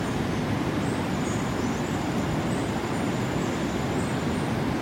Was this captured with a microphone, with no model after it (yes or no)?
yes